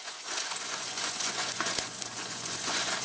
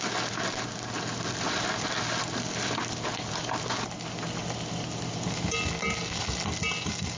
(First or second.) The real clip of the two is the second